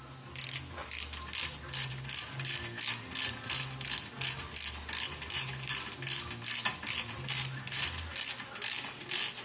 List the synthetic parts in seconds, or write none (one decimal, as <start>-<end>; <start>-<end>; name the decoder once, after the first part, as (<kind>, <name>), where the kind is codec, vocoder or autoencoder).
none